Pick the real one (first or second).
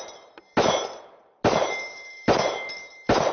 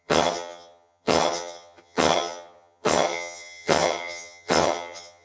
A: first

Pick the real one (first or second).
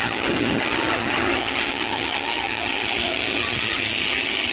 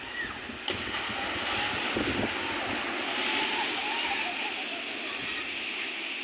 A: second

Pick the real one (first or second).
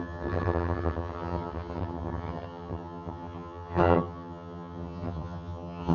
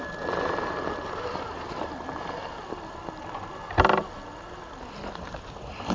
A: second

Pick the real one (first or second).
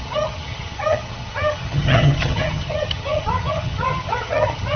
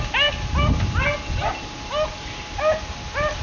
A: second